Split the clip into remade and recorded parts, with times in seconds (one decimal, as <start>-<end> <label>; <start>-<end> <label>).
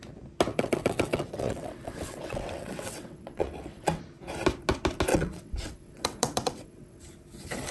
0.0-0.5 recorded; 0.5-4.0 remade; 4.0-5.1 recorded; 5.1-7.0 remade; 7.0-7.7 recorded